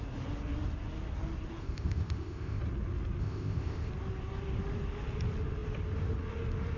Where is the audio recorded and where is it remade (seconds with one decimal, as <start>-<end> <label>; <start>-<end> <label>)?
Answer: 0.0-1.6 recorded; 1.6-2.6 remade; 2.6-3.2 recorded; 3.2-3.9 remade; 3.9-6.8 recorded

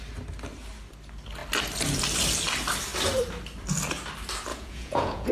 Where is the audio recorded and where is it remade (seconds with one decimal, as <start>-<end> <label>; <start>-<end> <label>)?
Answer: 0.0-4.5 recorded; 4.5-5.3 remade

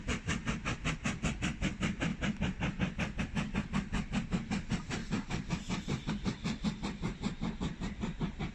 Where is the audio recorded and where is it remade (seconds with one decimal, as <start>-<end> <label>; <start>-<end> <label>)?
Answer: 0.0-5.0 recorded; 5.0-6.1 remade; 6.1-8.5 recorded